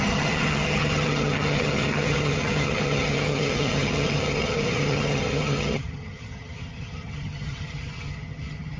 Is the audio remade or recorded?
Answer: remade